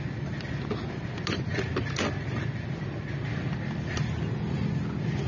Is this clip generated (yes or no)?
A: no